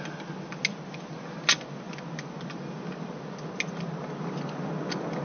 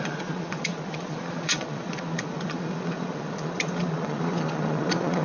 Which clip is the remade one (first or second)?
second